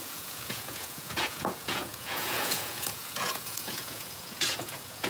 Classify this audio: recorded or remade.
remade